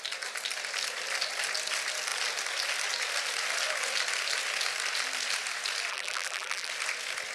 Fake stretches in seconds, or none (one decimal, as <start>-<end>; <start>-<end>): 5.9-6.7